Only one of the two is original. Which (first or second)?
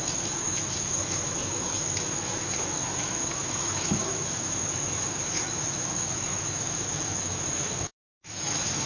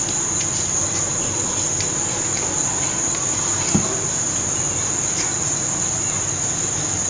second